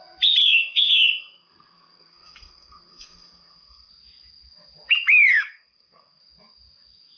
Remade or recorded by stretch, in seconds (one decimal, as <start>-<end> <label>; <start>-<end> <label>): 0.0-0.4 recorded; 0.4-3.9 remade; 3.9-5.3 recorded; 5.3-6.2 remade; 6.2-7.2 recorded